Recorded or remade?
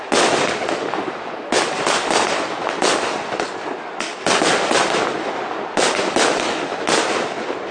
recorded